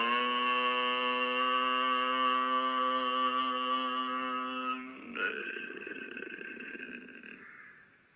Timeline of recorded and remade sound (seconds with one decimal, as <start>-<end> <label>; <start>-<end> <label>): 0.0-5.4 recorded; 5.4-6.8 remade; 6.8-8.2 recorded